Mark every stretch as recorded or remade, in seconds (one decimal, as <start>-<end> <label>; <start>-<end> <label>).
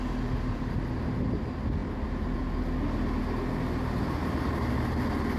0.0-5.4 recorded